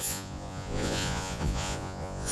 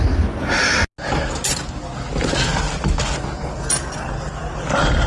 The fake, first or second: first